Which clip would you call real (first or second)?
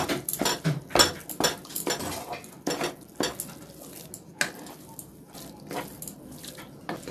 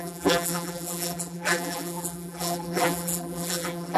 first